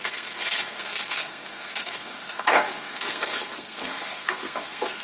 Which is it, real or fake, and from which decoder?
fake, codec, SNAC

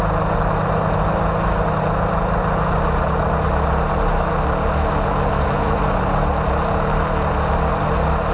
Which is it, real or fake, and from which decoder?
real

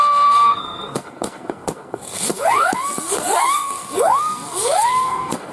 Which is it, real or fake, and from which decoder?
fake, codec, SNAC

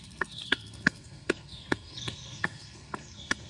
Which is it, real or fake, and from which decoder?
fake, codec, SNAC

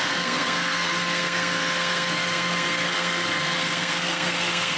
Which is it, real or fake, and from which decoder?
fake, codec, SNAC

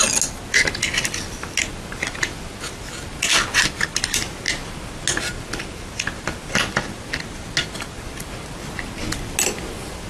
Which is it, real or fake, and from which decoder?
real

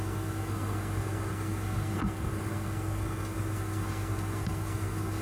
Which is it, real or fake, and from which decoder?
fake, codec, SNAC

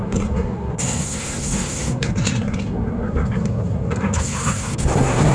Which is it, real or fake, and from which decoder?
fake, codec, SNAC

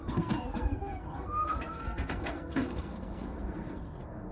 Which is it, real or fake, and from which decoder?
fake, codec, SNAC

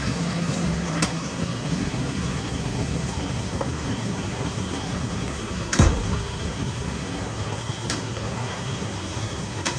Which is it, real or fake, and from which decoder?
fake, codec, SNAC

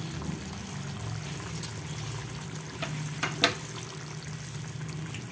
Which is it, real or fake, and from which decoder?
real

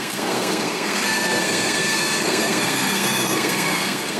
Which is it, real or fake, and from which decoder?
fake, codec, SNAC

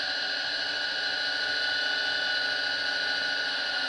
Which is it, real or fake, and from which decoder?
real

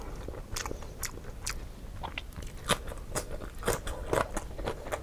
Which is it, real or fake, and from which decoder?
real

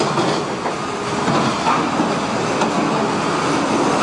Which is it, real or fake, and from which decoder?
real